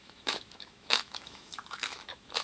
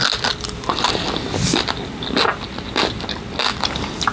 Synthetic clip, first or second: first